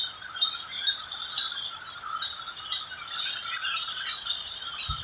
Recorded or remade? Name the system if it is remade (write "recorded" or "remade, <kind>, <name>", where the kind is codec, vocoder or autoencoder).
recorded